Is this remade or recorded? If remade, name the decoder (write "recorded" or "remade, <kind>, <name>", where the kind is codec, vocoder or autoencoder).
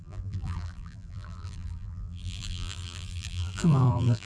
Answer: remade, vocoder, BigVGAN v2